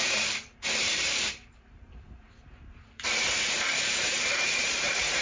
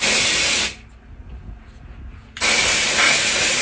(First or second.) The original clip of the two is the second